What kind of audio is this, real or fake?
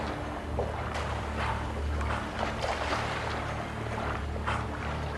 real